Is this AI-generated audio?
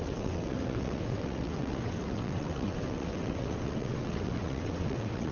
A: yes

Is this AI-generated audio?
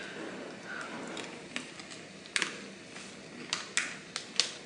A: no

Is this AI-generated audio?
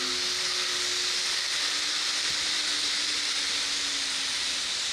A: no